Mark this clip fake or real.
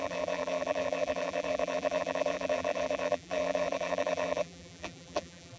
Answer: fake